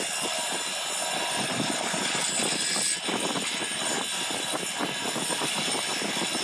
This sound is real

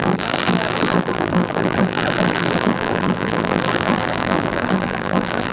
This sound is fake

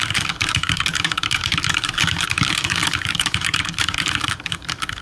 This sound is fake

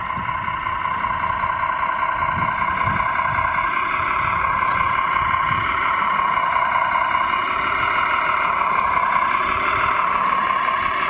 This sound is real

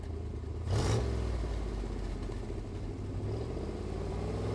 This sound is real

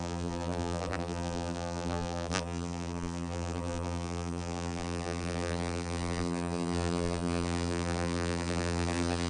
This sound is fake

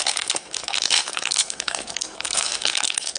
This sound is fake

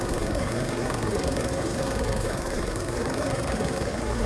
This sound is fake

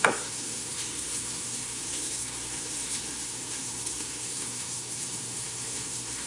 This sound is fake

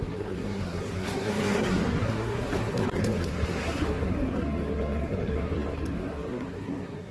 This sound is fake